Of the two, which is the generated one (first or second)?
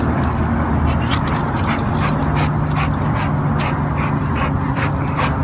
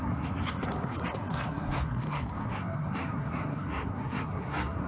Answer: second